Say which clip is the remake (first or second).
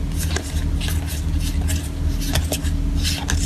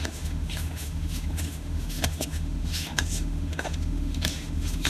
second